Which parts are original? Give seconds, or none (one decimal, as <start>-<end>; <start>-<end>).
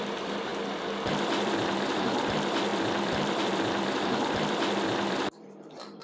0.5-1.1